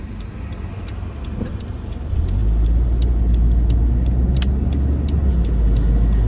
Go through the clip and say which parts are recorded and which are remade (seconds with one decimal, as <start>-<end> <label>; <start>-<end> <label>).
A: 0.0-6.3 recorded